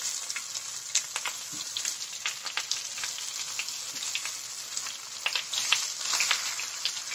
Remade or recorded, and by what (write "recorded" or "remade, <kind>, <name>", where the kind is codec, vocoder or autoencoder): recorded